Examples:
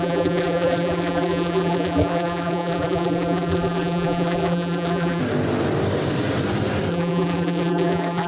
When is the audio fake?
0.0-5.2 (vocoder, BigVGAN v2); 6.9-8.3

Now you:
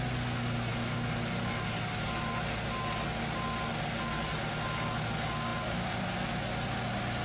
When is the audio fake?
5.5-6.5 (vocoder, BigVGAN v2)

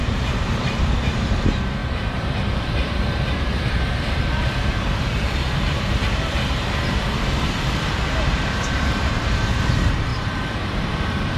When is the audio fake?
0.0-11.4 (vocoder, BigVGAN v2)